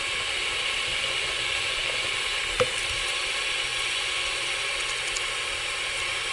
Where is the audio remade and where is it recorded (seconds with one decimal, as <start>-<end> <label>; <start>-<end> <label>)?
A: 0.0-0.9 recorded; 0.9-2.4 remade; 2.4-3.7 recorded; 3.7-4.6 remade; 4.6-6.3 recorded